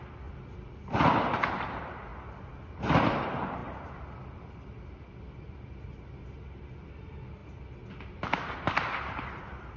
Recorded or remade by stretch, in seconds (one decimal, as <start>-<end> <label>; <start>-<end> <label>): 0.0-9.8 recorded